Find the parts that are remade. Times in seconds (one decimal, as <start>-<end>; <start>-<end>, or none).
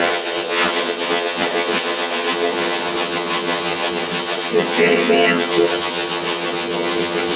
0.0-7.4